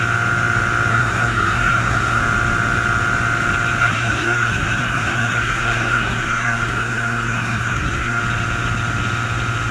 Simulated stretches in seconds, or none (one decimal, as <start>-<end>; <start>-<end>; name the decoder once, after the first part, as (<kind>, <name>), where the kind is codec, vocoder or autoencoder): 0.9-2.2 (codec, SNAC); 3.8-8.2